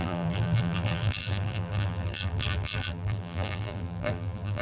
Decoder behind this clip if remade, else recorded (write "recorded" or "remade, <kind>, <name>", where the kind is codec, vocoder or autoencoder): remade, vocoder, BigVGAN v2